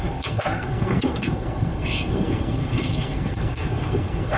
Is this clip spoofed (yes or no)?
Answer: yes